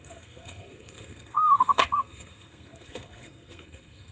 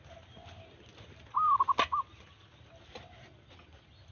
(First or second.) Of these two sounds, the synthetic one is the first